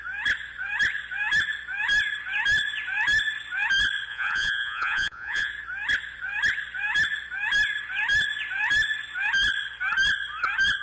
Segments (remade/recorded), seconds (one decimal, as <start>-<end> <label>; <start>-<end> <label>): 0.0-4.1 recorded; 4.1-5.5 remade; 5.5-10.8 recorded